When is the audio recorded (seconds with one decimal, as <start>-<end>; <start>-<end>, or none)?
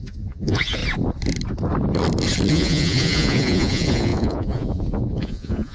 0.8-2.5